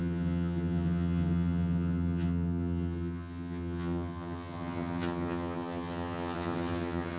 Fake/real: fake